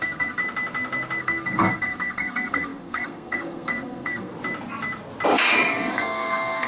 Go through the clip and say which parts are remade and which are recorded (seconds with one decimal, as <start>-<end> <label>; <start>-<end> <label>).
0.0-0.4 remade; 0.4-1.2 recorded; 1.2-4.3 remade; 4.3-5.9 recorded; 5.9-6.7 remade